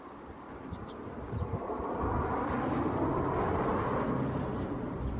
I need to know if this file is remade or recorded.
recorded